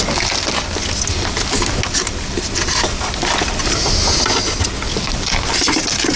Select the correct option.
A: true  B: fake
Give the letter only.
A